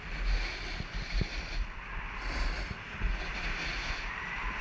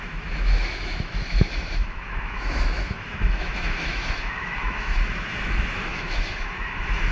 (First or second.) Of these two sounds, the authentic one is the first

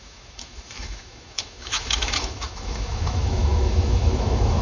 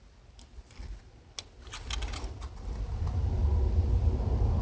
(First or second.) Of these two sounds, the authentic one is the second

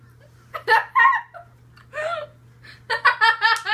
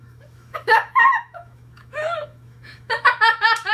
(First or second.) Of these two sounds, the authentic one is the first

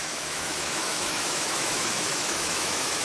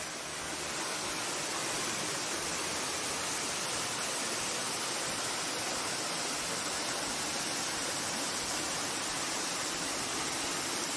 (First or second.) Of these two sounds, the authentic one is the second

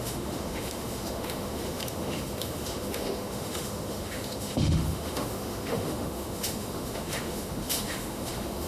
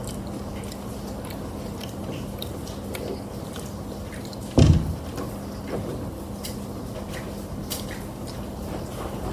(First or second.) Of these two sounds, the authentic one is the second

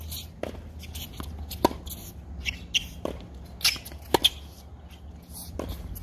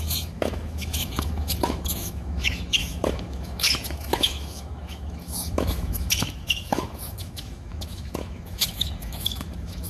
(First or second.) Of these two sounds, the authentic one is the first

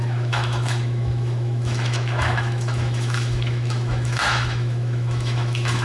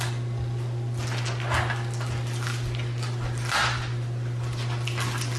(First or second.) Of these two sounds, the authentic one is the second